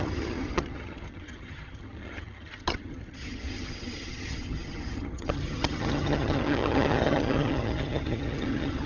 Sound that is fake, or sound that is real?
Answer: fake